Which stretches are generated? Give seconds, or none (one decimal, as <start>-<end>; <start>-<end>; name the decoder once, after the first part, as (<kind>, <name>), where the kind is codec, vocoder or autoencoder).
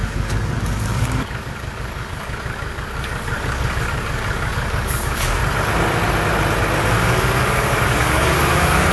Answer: 0.0-5.4 (codec, DAC); 6.9-8.9